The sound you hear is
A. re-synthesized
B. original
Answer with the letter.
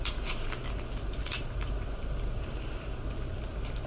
B